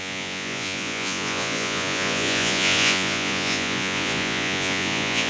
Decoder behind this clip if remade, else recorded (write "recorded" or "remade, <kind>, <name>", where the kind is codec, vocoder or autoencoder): remade, vocoder, Vocos